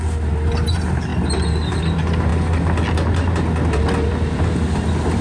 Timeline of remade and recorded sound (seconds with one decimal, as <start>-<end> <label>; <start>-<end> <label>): 0.0-5.2 recorded